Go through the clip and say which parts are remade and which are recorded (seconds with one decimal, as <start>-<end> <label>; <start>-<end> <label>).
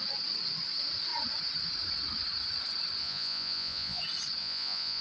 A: 0.0-3.0 recorded; 3.0-4.0 remade; 4.0-4.4 recorded; 4.4-5.0 remade